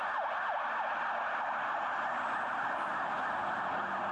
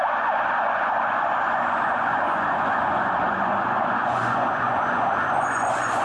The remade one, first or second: second